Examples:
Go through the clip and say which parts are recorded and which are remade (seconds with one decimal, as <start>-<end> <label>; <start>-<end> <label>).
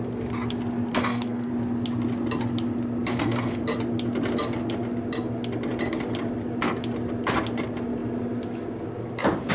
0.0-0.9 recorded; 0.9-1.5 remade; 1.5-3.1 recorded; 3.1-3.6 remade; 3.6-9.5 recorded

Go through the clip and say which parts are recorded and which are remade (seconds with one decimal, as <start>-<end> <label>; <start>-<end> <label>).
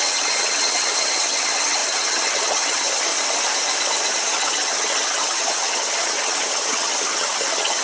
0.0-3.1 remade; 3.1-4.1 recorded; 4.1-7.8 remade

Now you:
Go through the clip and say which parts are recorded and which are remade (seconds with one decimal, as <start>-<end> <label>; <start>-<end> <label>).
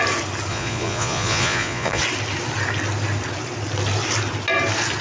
0.0-0.5 recorded; 0.5-2.0 remade; 2.0-5.0 recorded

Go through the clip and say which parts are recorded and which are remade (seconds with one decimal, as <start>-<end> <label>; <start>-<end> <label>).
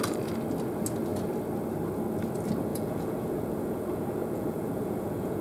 0.0-2.7 recorded; 2.7-5.4 remade